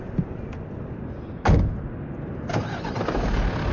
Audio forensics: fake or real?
real